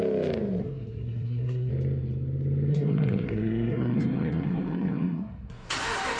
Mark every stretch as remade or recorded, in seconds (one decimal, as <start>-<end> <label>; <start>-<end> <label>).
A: 0.0-0.6 recorded; 0.6-1.7 remade; 1.7-2.7 recorded; 2.7-5.7 remade; 5.7-6.2 recorded